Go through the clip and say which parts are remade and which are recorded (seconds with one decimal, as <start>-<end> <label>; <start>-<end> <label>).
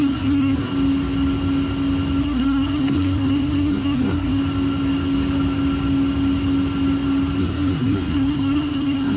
0.0-0.7 remade; 0.7-2.2 recorded; 2.2-4.4 remade; 4.4-7.4 recorded; 7.4-9.2 remade